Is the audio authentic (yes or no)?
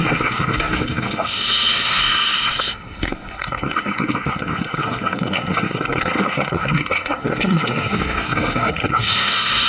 no